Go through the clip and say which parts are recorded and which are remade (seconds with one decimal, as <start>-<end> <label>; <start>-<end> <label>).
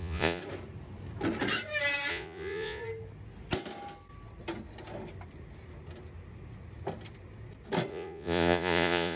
0.0-0.4 remade; 0.4-2.1 recorded; 2.1-2.8 remade; 2.8-7.9 recorded; 7.9-9.2 remade